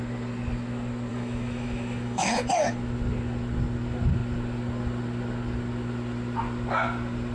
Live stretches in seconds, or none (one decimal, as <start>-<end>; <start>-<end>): 0.0-1.1; 2.5-7.3